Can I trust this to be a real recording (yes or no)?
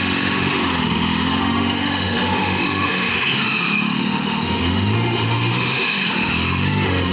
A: no